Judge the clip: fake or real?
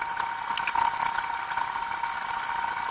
real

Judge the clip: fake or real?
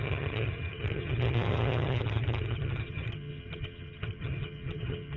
fake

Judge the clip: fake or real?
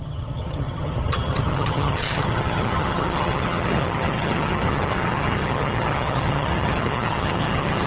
fake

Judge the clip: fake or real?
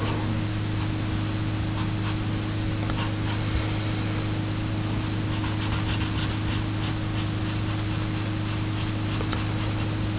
real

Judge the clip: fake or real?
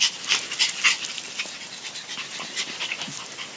real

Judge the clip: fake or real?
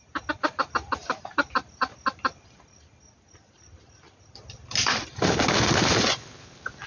real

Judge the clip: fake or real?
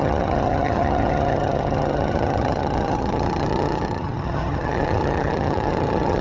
fake